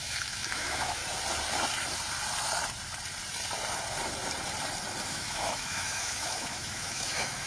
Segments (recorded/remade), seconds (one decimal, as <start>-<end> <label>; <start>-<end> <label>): 0.0-1.0 remade; 1.0-5.1 recorded; 5.1-7.5 remade